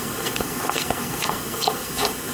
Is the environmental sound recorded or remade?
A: remade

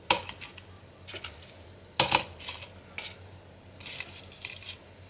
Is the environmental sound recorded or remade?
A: recorded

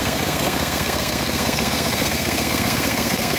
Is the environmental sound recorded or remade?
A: remade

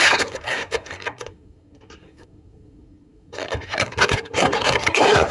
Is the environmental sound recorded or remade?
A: remade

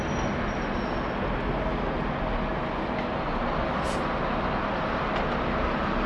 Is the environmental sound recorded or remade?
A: recorded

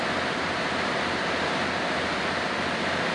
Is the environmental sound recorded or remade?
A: recorded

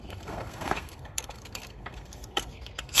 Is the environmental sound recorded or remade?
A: remade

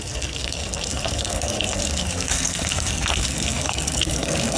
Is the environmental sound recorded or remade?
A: remade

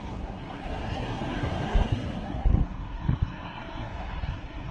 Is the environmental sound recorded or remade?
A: remade